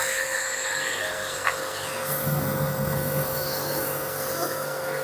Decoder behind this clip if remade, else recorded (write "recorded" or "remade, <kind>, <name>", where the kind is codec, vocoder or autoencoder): remade, codec, SNAC